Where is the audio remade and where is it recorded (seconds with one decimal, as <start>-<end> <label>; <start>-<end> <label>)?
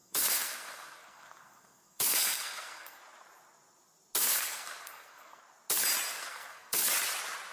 0.0-3.0 remade; 3.0-4.2 recorded; 4.2-5.4 remade; 5.4-6.1 recorded; 6.1-6.8 remade; 6.8-7.5 recorded